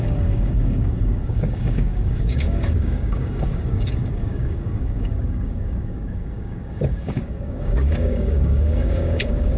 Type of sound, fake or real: fake